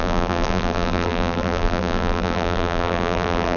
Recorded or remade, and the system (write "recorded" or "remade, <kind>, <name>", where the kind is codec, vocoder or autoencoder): remade, vocoder, BigVGAN v2